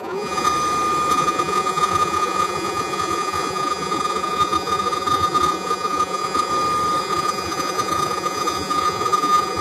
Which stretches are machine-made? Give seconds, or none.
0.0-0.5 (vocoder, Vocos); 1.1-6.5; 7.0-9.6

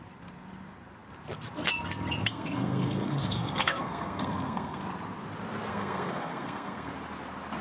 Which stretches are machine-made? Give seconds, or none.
2.2-4.8 (codec, SNAC); 5.7-6.9

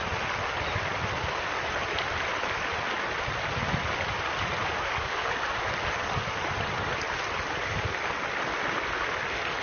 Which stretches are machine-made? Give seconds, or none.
4.6-5.7 (codec, DAC)

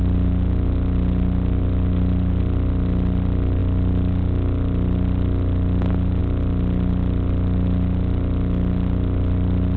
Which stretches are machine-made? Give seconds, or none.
none

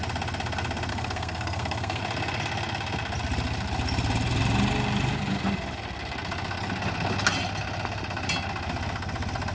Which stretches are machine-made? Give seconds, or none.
0.9-2.0 (codec, SNAC)

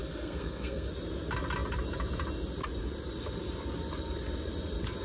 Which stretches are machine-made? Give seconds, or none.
0.0-0.9 (codec, SNAC)

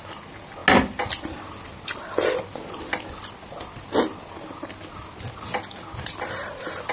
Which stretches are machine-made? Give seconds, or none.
none